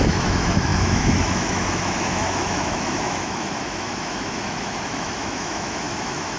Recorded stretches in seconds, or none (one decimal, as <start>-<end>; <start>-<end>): none